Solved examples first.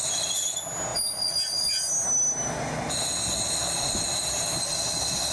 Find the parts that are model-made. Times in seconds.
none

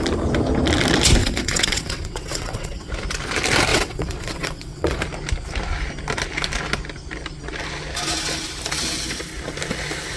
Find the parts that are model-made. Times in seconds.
1.2-2.9; 3.7-5.0

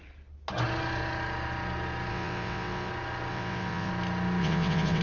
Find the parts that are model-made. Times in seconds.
2.1-2.9; 3.3-3.9; 4.4-5.0

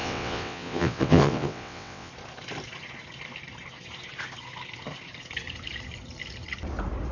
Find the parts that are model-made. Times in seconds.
0.0-2.1